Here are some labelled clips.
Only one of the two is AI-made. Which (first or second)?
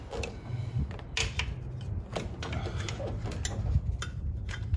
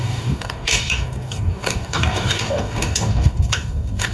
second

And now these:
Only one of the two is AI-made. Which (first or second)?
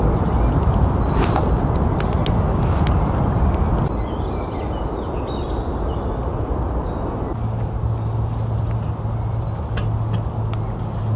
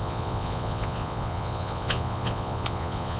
second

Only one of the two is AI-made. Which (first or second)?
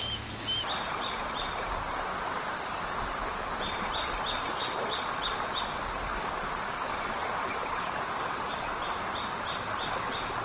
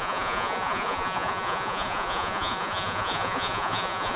second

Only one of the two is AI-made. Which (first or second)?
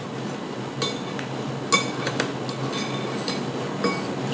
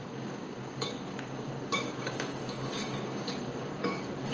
second